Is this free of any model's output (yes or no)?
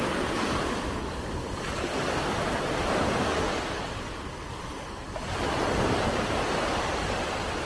yes